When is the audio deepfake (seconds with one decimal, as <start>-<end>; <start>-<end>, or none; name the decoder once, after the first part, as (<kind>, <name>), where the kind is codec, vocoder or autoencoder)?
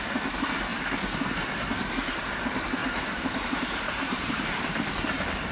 2.8-4.9 (vocoder, BigVGAN v2)